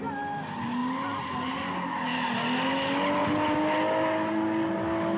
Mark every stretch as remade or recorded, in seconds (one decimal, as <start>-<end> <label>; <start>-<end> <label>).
0.0-5.2 recorded